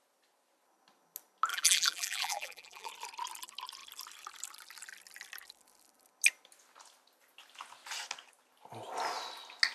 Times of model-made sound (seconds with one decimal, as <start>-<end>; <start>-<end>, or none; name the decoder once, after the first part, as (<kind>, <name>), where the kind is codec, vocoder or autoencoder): 1.5-2.9 (vocoder, BigVGAN v2)